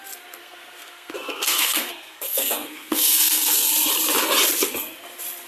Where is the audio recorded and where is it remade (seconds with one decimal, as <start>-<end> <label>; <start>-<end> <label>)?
0.0-0.4 recorded; 0.4-3.7 remade; 3.7-5.5 recorded